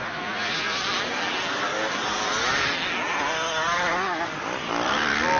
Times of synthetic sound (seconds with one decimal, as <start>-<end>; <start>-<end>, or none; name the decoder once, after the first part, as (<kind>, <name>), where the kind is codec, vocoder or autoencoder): 0.0-0.8 (vocoder, Vocos)